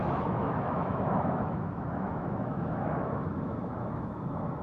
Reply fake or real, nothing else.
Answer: fake